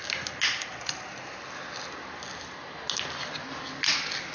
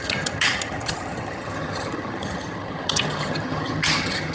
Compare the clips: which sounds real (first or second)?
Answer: first